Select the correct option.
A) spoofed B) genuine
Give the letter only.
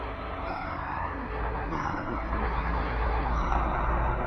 A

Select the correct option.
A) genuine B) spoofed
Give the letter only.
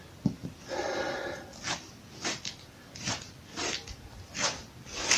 A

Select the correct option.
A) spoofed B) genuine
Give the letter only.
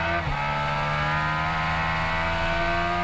B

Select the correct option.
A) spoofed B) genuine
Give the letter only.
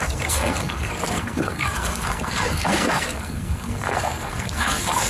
A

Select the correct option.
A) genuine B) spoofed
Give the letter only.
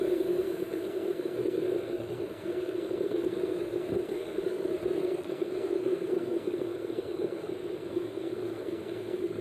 B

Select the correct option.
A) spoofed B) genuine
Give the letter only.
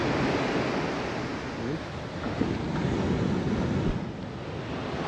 B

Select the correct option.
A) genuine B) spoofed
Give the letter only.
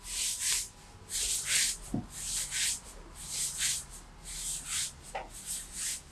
A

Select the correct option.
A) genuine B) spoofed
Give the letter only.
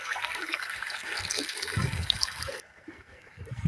B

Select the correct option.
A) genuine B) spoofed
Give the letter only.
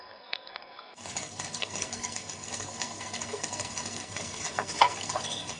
B